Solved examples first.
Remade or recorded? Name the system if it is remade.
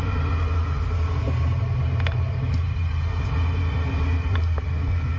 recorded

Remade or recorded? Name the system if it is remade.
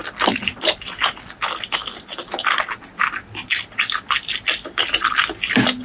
recorded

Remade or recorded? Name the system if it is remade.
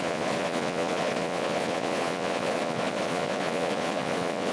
remade, vocoder, Vocos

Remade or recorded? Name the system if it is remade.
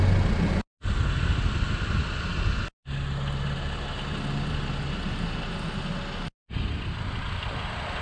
recorded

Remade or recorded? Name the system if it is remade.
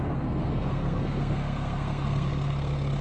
remade, codec, SNAC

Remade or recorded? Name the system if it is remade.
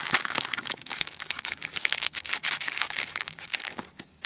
remade, codec, DAC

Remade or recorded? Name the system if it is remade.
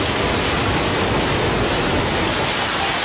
recorded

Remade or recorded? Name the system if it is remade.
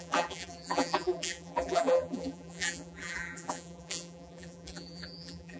remade, vocoder, BigVGAN v2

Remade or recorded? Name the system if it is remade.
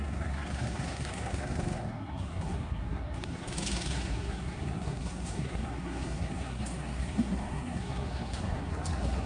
remade, codec, SNAC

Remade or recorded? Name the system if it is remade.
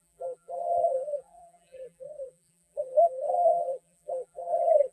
remade, vocoder, BigVGAN v2